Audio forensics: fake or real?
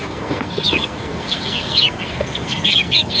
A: fake